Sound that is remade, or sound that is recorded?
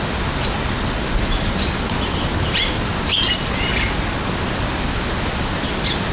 recorded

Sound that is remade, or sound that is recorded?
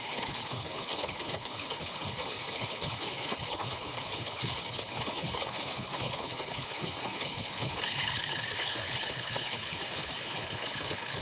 remade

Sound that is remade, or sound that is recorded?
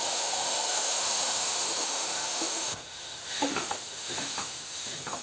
remade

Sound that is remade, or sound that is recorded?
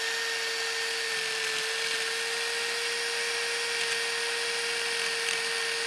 recorded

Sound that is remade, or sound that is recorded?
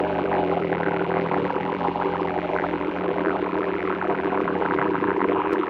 remade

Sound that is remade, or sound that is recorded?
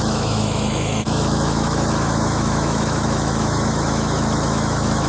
remade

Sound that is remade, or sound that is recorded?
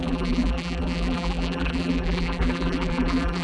remade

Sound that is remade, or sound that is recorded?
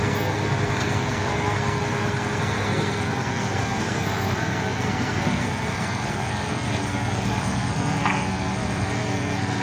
remade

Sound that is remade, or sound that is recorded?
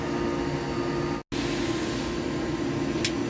recorded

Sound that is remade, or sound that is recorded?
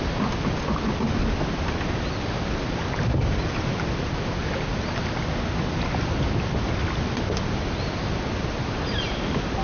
recorded